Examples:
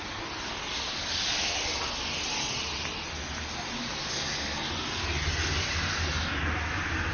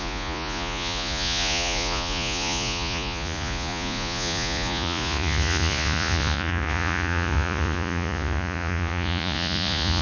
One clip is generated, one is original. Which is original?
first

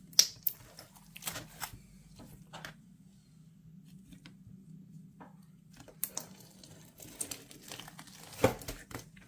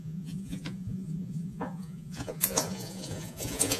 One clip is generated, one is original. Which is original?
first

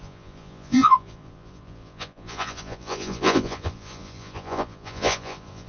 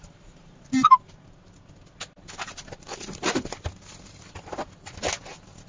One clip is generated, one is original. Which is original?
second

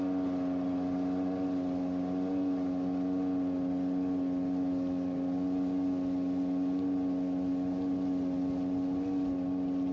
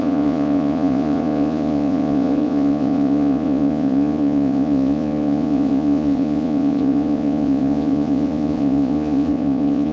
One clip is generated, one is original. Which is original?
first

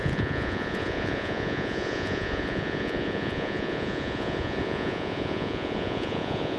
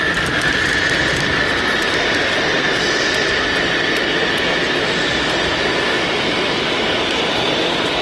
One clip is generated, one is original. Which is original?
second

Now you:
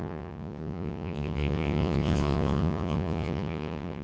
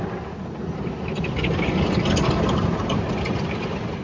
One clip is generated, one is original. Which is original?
second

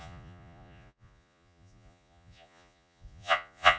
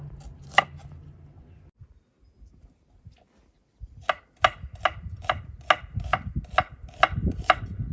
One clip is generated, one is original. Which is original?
second